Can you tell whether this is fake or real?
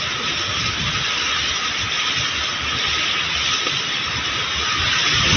real